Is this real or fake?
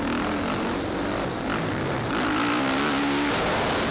real